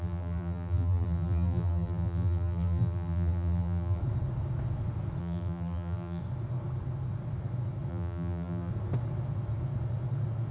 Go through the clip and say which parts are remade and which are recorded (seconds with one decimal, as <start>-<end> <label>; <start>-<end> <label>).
0.0-4.0 remade; 4.0-5.2 recorded; 5.2-6.2 remade; 6.2-7.9 recorded; 7.9-8.7 remade; 8.7-10.5 recorded

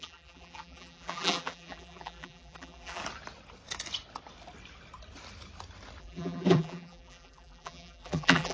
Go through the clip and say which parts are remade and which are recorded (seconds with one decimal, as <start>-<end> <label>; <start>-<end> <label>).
0.0-3.0 remade; 3.0-6.0 recorded; 6.0-8.5 remade

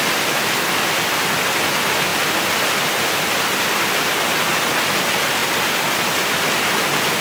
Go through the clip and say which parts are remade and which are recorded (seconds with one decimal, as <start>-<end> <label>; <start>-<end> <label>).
0.0-2.1 recorded; 2.1-3.4 remade; 3.4-5.4 recorded; 5.4-7.2 remade

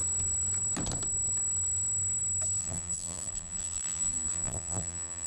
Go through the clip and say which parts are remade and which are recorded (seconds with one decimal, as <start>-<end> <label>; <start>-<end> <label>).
0.0-2.6 recorded; 2.6-5.3 remade

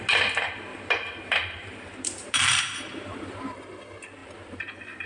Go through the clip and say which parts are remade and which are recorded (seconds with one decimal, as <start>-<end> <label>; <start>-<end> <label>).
0.0-0.7 recorded; 0.7-3.8 remade; 3.8-4.2 recorded; 4.2-5.1 remade

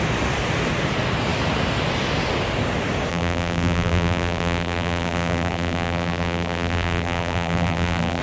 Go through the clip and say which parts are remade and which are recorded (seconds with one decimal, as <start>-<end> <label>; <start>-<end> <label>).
0.0-3.1 recorded; 3.1-8.2 remade

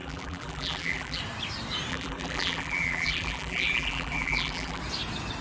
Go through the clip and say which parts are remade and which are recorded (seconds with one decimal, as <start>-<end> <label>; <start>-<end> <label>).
0.0-1.2 remade; 1.2-1.9 recorded; 1.9-4.8 remade; 4.8-5.4 recorded

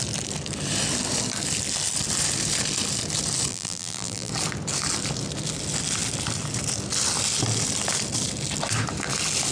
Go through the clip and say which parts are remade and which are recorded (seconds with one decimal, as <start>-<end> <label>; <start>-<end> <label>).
0.0-3.5 recorded; 3.5-4.3 remade; 4.3-9.5 recorded